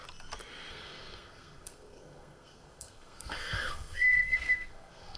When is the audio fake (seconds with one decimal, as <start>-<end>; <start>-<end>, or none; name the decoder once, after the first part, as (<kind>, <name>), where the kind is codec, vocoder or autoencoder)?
0.7-5.2 (codec, SNAC)